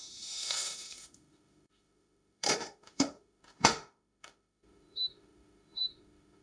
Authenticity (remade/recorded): remade